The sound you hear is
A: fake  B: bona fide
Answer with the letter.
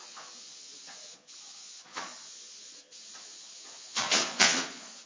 A